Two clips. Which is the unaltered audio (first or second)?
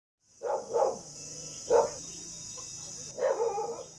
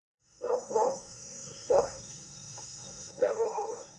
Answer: first